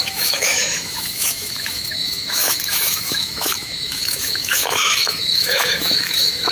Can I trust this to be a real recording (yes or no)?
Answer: no